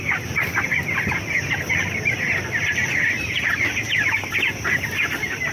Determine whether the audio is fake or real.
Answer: real